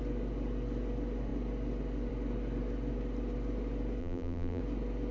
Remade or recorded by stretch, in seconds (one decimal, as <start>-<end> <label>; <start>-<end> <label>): 0.0-4.0 recorded; 4.0-4.6 remade; 4.6-5.1 recorded